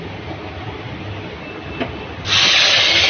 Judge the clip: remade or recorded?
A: recorded